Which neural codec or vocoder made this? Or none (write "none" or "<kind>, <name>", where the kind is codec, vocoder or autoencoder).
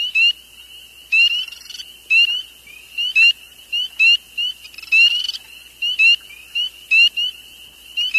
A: none